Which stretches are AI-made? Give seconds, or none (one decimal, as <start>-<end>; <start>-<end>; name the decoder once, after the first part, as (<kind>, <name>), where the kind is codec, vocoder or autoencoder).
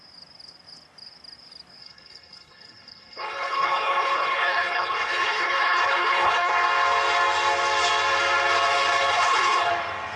1.8-6.5 (codec, HILCodec); 9.1-9.7